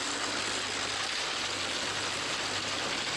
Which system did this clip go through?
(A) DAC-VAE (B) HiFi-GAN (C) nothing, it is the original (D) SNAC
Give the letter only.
C